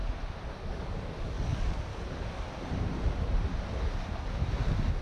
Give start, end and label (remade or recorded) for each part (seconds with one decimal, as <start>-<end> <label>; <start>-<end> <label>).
0.0-0.6 recorded; 0.6-1.9 remade; 1.9-5.0 recorded